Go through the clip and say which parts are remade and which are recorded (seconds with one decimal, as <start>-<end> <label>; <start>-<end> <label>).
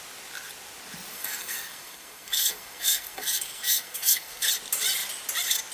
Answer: 0.0-1.1 recorded; 1.1-4.5 remade; 4.5-5.7 recorded